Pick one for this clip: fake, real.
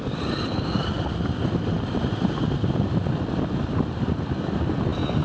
real